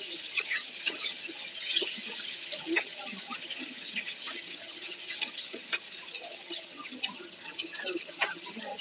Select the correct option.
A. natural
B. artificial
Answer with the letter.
B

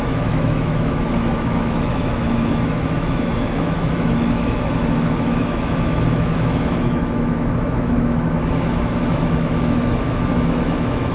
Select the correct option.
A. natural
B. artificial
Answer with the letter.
B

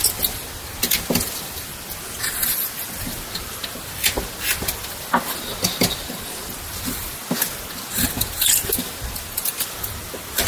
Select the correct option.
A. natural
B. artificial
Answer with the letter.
A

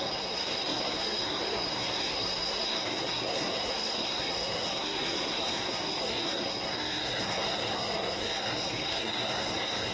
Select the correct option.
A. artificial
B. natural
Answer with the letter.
A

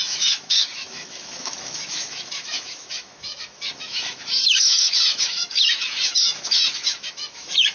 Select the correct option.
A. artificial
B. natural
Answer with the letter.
A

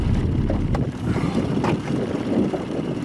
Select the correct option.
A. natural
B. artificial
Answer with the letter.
A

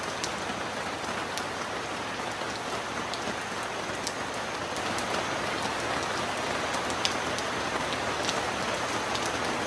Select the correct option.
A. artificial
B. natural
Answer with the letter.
B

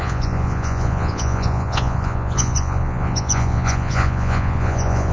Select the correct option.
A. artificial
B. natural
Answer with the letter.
A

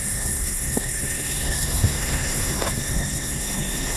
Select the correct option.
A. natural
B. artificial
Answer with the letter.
B